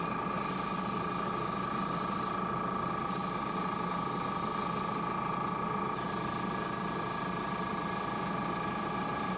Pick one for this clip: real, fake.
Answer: real